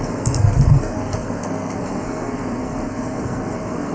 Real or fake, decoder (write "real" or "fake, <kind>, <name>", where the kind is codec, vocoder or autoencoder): fake, codec, SNAC